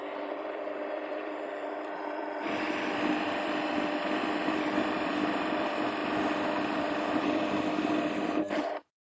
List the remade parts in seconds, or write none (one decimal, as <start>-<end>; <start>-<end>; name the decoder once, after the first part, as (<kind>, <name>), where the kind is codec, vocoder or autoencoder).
0.0-6.0 (vocoder, BigVGAN v2); 7.2-9.1